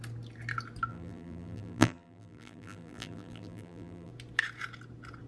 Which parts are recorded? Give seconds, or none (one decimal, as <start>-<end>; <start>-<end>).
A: 0.0-0.9; 4.1-5.3